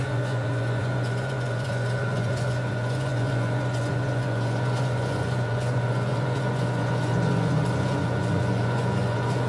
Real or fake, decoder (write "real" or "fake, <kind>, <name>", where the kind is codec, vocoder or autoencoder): fake, vocoder, Vocos